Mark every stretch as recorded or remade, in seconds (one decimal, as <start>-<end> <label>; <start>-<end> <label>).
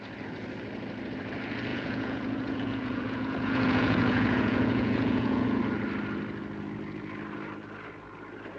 0.0-1.7 recorded; 1.7-5.6 remade; 5.6-8.6 recorded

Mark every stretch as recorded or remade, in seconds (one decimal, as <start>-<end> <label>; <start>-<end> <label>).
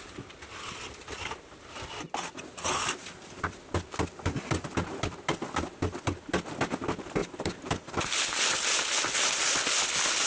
0.0-10.3 recorded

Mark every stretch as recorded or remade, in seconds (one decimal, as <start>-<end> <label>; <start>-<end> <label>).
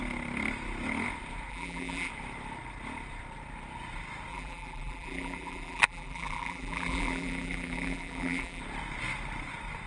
0.0-1.5 recorded; 1.5-2.1 remade; 2.1-4.3 recorded; 4.3-8.6 remade; 8.6-9.9 recorded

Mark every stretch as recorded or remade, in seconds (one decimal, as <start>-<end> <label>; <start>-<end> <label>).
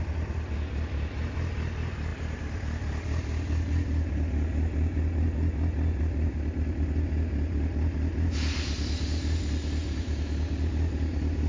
0.0-11.5 recorded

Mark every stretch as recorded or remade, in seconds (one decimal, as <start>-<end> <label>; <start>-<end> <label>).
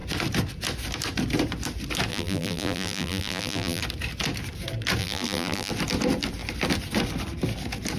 0.0-2.1 recorded; 2.1-3.8 remade; 3.8-5.0 recorded; 5.0-5.7 remade; 5.7-8.0 recorded